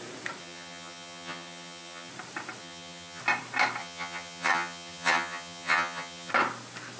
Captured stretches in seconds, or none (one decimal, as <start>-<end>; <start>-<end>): 0.0-0.4; 2.1-2.6; 3.2-3.8; 6.3-7.0

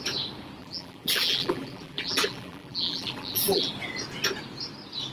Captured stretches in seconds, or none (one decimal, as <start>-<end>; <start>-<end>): 0.0-0.6; 3.7-5.1

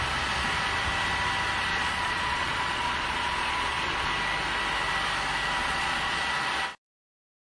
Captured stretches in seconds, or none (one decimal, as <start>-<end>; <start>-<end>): 0.0-1.7; 4.1-5.6; 6.3-7.5

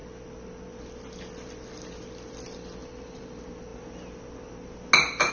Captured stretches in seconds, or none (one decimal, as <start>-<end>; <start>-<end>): 0.0-5.3

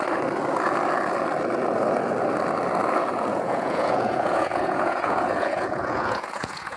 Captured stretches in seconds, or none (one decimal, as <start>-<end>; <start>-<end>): 0.0-3.3

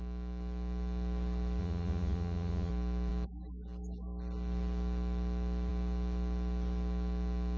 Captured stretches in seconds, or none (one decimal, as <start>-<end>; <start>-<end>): 0.0-1.6; 2.7-7.6

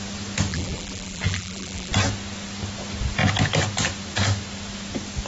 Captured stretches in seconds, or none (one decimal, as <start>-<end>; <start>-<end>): 0.0-0.5; 1.9-5.3